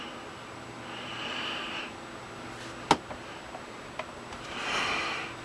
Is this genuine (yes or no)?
yes